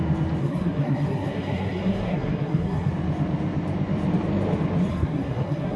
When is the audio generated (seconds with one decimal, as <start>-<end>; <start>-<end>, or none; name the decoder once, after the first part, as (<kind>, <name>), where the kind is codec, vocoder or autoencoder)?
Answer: 0.4-2.9 (codec, SNAC); 4.9-5.8